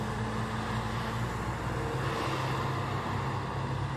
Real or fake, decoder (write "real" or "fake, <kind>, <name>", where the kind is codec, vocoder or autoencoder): real